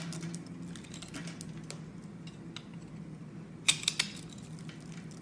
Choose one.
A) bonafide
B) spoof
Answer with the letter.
A